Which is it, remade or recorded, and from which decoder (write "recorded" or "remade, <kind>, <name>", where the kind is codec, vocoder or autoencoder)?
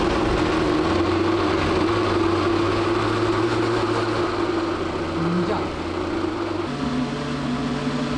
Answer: recorded